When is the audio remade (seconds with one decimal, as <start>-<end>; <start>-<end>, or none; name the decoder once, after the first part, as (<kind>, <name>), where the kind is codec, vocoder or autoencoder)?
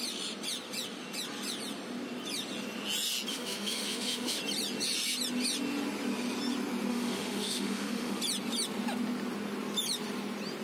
3.3-4.4 (autoencoder, DAC-VAE); 6.9-8.2